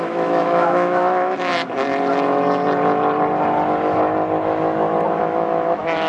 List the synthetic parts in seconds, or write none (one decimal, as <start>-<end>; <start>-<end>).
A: 0.0-1.5; 5.2-6.1